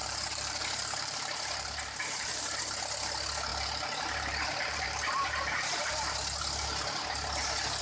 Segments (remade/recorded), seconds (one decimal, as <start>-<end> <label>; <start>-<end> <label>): 0.0-2.6 remade; 2.6-3.5 recorded; 3.5-5.9 remade; 5.9-7.8 recorded